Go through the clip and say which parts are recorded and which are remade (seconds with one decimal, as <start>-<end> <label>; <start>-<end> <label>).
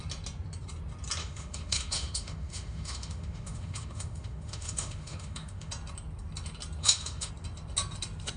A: 0.0-1.2 recorded; 1.2-5.7 remade; 5.7-6.8 recorded; 6.8-7.3 remade; 7.3-8.4 recorded